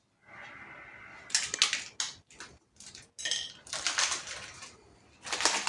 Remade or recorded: recorded